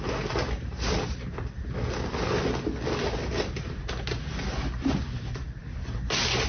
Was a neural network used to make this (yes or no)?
no